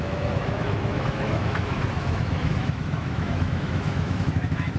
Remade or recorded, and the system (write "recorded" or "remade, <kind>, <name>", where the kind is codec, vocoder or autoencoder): remade, autoencoder, DAC-VAE